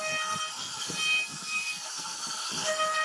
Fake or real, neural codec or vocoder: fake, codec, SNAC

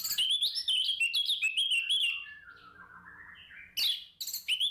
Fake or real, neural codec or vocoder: real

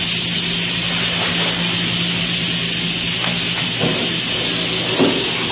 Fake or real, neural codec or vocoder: real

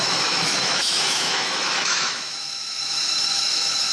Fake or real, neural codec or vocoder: fake, autoencoder, DAC-VAE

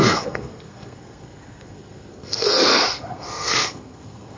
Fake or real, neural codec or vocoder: fake, codec, SNAC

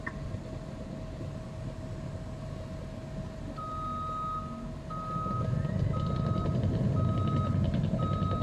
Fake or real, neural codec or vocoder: real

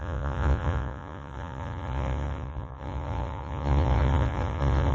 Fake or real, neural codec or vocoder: fake, vocoder, Vocos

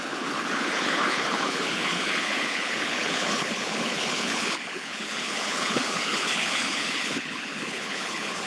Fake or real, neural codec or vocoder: fake, codec, HILCodec